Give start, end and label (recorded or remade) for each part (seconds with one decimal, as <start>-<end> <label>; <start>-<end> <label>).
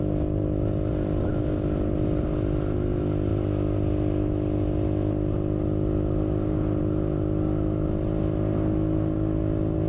0.0-9.9 recorded